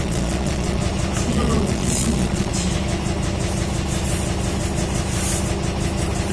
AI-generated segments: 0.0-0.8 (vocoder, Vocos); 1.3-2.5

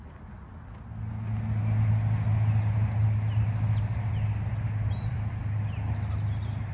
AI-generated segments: none